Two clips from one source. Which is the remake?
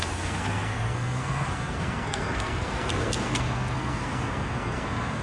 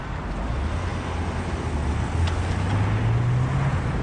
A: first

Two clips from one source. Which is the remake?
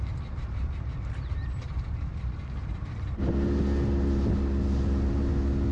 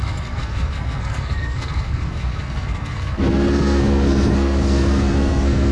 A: second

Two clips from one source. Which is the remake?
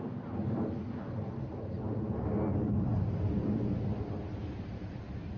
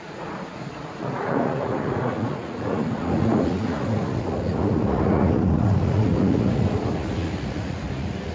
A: second